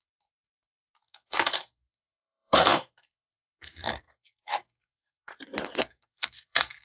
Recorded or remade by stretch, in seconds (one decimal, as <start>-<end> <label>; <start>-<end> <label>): 0.0-5.3 remade; 5.3-5.8 recorded; 5.8-6.8 remade